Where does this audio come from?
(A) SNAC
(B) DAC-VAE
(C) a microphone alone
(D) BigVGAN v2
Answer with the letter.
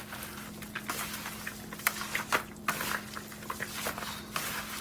C